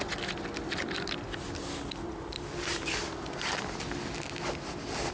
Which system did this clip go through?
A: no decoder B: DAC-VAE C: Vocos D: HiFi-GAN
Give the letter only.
A